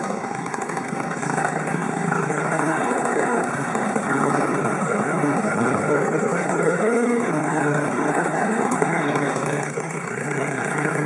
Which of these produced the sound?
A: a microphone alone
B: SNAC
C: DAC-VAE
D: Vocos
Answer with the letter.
B